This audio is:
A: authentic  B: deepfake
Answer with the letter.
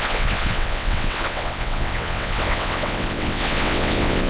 B